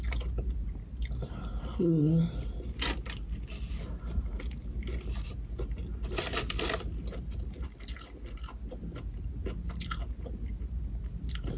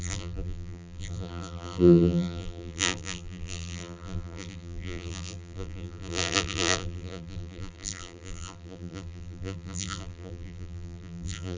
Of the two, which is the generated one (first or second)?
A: second